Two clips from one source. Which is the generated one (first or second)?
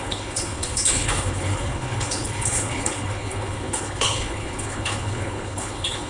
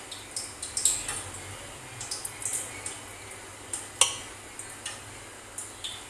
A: first